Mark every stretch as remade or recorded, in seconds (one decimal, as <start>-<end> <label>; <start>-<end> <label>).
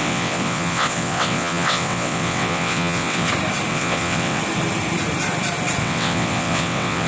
0.0-3.3 remade; 3.3-3.7 recorded; 3.7-4.4 remade; 4.4-5.8 recorded; 5.8-7.1 remade